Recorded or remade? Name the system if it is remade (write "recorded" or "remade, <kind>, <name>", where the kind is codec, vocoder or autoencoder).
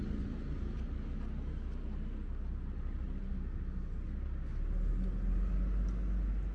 recorded